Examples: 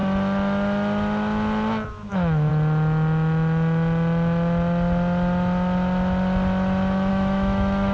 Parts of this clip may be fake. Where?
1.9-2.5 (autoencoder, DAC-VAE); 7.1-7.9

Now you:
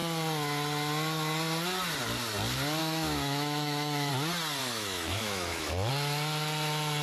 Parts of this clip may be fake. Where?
2.8-4.1 (autoencoder, DAC-VAE); 4.6-5.9

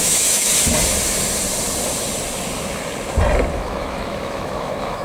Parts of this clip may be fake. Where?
0.0-0.5 (autoencoder, DAC-VAE); 3.5-5.0

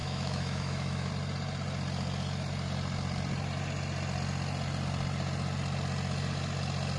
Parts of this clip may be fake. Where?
0.0-1.1 (autoencoder, DAC-VAE)

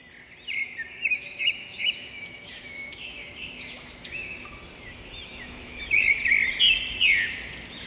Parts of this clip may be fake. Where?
1.0-4.5 (autoencoder, DAC-VAE); 5.3-6.1

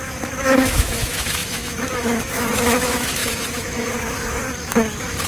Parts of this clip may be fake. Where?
0.0-5.3 (autoencoder, DAC-VAE)

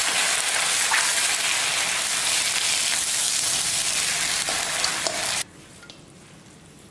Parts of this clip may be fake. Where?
none